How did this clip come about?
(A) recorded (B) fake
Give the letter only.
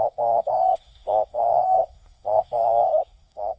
B